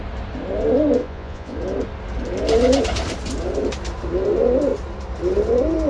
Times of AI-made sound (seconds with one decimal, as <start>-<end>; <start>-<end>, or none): 1.0-1.6